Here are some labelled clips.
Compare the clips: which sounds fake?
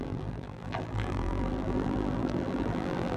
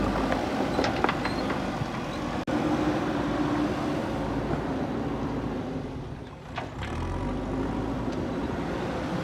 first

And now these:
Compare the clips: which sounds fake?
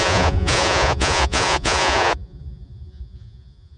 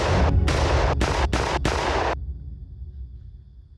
first